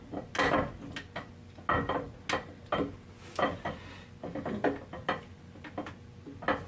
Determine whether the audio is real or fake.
real